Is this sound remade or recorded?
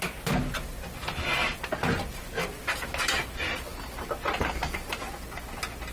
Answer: recorded